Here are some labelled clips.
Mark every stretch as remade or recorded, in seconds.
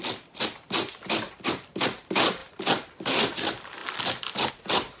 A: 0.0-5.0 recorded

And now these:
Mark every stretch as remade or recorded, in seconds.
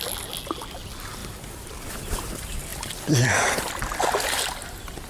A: 0.0-5.1 recorded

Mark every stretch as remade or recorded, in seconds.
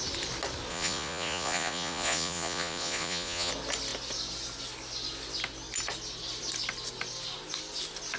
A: 0.0-0.7 recorded; 0.7-3.5 remade; 3.5-8.2 recorded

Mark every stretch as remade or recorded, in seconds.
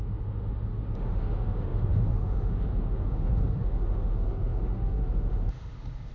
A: 0.0-6.1 remade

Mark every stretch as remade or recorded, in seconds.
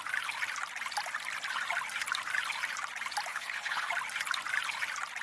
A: 0.0-3.3 recorded; 3.3-3.9 remade; 3.9-5.2 recorded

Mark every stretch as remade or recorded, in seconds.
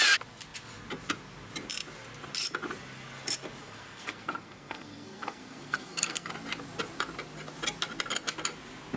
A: 0.0-3.6 recorded; 3.6-6.3 remade; 6.3-9.0 recorded